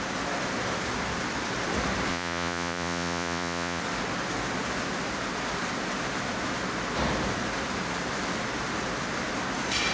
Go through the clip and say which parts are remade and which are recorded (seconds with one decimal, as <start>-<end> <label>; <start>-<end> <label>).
0.0-2.1 recorded; 2.1-3.8 remade; 3.8-9.9 recorded